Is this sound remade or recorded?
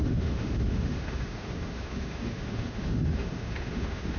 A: remade